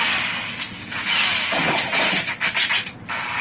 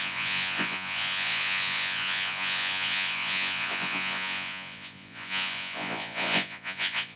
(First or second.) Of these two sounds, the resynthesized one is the second